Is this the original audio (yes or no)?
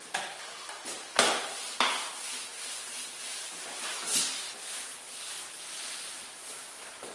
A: yes